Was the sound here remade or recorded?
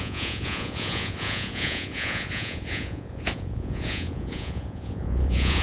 remade